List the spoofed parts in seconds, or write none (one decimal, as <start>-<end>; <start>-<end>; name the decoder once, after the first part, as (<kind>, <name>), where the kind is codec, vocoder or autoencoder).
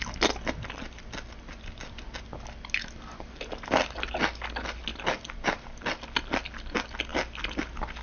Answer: none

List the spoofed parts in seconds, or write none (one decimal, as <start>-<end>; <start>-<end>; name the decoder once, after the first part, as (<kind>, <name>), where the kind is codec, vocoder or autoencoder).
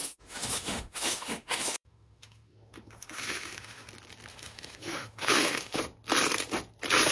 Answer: 0.0-3.9 (autoencoder, DAC-VAE); 4.3-5.8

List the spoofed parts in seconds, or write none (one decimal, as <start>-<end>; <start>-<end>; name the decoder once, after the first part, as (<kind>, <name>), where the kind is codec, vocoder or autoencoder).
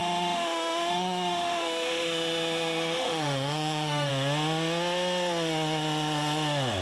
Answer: 0.0-4.1 (autoencoder, DAC-VAE)